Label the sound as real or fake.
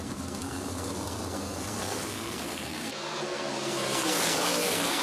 fake